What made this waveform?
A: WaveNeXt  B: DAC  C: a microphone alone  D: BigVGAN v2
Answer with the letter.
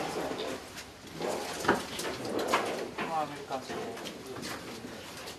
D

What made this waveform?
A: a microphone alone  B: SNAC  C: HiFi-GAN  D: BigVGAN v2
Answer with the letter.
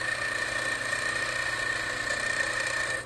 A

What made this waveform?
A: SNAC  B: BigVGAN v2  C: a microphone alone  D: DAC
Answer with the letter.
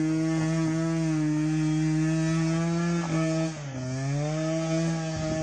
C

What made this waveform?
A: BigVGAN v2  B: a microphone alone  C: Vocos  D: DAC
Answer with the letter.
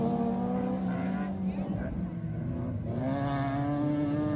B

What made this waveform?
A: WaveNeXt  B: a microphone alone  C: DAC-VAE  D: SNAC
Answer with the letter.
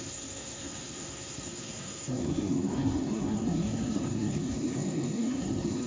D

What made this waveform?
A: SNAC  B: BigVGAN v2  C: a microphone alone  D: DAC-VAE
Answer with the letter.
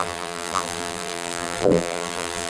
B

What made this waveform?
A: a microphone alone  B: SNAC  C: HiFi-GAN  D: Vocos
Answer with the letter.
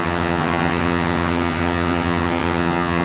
C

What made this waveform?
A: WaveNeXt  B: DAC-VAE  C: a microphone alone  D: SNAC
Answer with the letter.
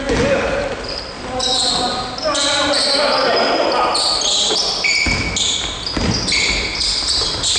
C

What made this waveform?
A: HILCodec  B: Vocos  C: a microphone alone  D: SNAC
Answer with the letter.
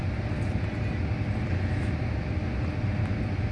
C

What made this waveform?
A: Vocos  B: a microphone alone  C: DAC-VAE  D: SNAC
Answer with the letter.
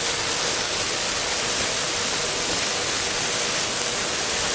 B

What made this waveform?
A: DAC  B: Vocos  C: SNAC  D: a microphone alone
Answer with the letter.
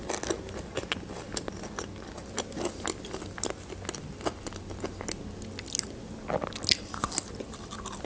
D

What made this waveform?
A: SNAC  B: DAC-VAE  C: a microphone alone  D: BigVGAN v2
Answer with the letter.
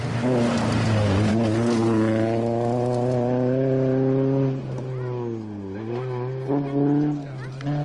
C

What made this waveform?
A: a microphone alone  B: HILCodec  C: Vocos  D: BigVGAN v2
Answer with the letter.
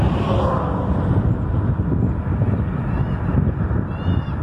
D